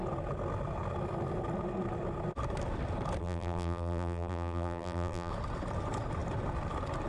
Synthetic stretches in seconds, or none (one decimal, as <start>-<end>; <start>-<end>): 3.2-5.3